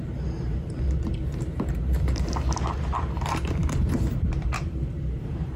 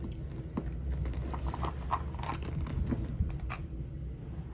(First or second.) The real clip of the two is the second